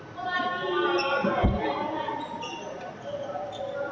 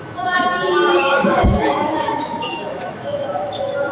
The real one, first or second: first